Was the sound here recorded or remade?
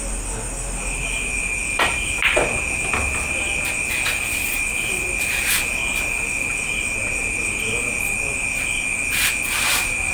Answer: recorded